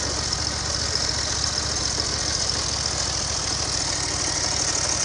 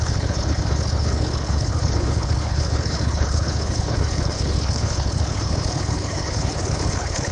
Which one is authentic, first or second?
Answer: first